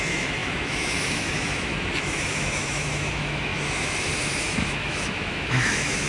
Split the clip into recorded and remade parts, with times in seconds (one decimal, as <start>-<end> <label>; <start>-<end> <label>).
0.0-6.1 remade